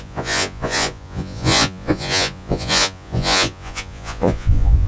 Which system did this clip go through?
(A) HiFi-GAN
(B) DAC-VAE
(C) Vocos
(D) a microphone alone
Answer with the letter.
C